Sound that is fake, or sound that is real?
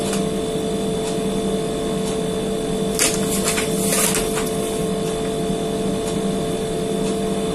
real